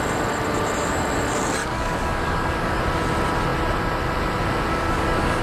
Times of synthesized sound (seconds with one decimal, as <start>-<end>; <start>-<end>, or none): 1.6-2.8; 4.7-5.4